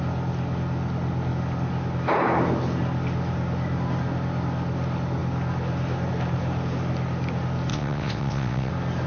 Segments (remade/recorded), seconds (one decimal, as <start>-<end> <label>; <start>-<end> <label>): 0.0-7.7 recorded; 7.7-8.7 remade; 8.7-9.1 recorded